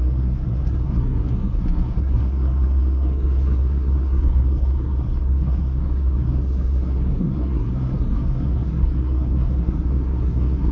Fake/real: fake